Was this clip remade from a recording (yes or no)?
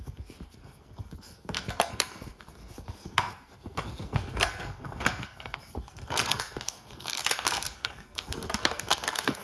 yes